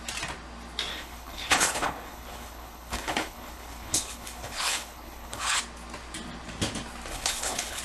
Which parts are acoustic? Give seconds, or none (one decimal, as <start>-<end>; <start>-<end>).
0.0-0.9; 5.6-7.1